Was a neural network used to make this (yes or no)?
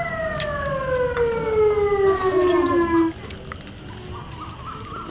no